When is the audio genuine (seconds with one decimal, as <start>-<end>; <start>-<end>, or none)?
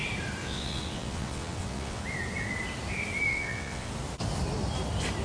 0.0-0.4; 2.0-3.3; 3.9-5.2